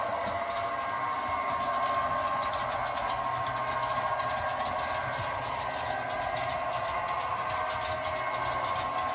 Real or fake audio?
real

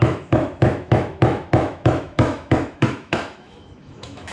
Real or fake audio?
fake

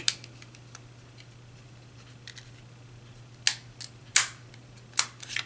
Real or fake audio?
real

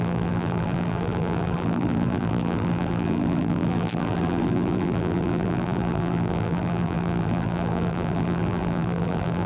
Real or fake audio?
fake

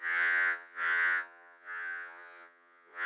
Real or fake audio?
fake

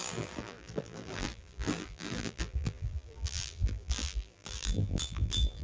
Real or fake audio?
fake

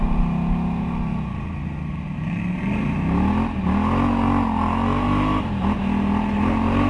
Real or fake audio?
real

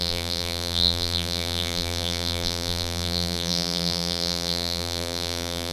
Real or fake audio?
fake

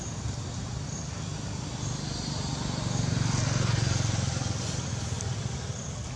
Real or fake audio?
real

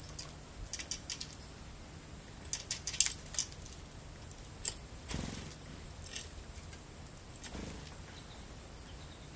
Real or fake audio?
real